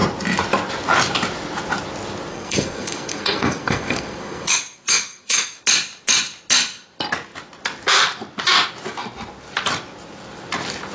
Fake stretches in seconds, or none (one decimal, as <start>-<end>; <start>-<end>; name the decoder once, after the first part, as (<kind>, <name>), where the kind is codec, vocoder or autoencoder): 2.3-5.6 (codec, SNAC)